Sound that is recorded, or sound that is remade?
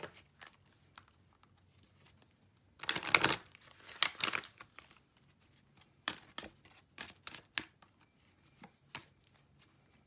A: recorded